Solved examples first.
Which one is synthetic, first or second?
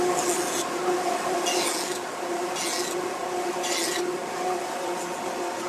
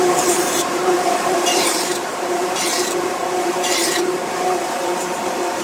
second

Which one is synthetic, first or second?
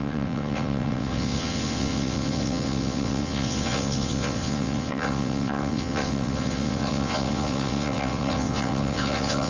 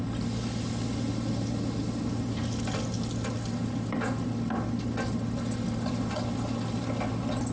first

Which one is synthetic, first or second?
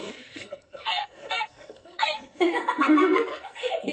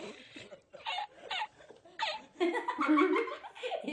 first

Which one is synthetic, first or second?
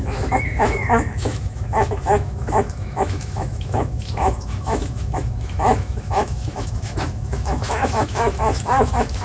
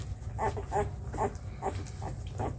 first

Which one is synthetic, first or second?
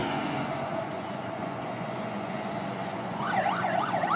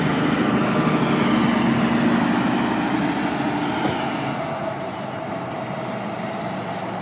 first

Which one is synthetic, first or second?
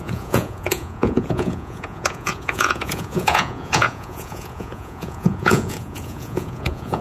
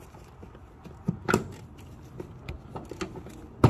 first